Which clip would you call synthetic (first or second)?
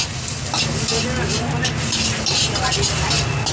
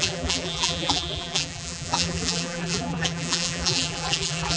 second